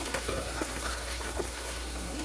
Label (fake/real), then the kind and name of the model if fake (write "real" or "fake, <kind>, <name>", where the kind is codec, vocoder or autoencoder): fake, codec, SNAC